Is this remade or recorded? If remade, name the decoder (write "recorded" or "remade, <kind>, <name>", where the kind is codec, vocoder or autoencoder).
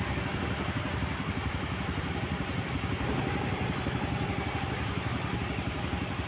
recorded